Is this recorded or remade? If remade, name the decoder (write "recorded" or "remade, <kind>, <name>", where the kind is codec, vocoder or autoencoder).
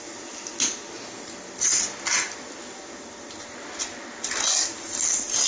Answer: recorded